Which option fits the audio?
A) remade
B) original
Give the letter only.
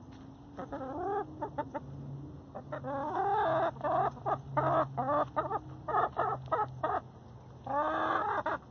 B